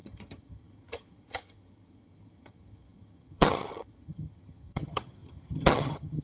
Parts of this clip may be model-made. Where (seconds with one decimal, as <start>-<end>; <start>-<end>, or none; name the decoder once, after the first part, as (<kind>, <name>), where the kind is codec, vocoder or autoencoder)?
0.0-6.2 (vocoder, HiFi-GAN)